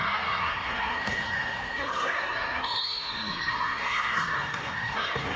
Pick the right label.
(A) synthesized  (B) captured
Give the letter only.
A